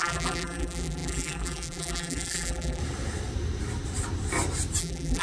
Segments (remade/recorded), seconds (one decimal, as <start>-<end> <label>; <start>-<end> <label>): 0.0-2.8 remade; 2.8-4.8 recorded; 4.8-5.2 remade